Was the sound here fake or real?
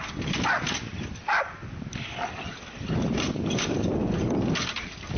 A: real